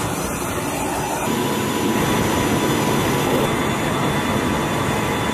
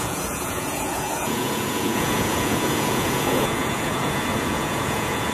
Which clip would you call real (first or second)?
first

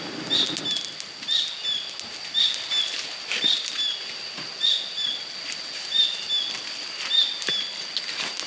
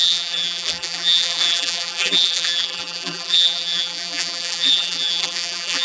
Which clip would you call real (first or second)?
first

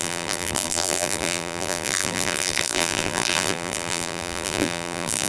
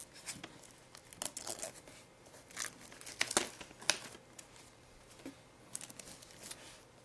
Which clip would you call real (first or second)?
second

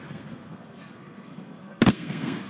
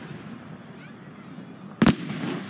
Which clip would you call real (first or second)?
second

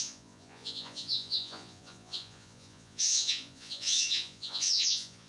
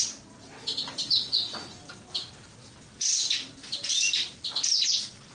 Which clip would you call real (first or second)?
second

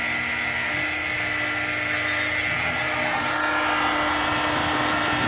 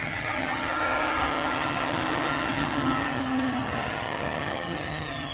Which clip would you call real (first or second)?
first